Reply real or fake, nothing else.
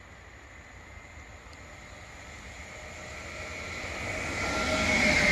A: real